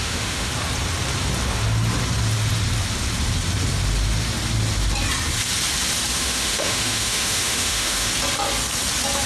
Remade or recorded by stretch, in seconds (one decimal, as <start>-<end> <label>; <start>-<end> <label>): 0.0-0.5 remade; 0.5-6.1 recorded; 6.1-8.1 remade; 8.1-9.3 recorded